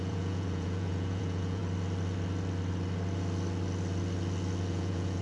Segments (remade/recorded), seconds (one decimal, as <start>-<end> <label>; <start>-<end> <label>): 0.0-1.6 remade; 1.6-4.7 recorded; 4.7-5.2 remade